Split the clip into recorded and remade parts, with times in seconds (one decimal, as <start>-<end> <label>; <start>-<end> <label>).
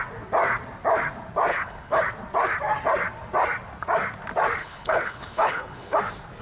0.0-1.5 recorded; 1.5-2.0 remade; 2.0-4.6 recorded; 4.6-6.0 remade; 6.0-6.4 recorded